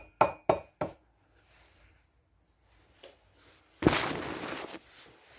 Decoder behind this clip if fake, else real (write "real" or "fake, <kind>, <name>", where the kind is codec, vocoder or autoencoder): real